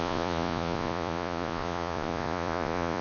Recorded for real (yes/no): no